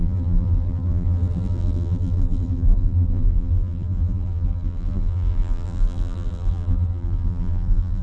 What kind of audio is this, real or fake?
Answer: fake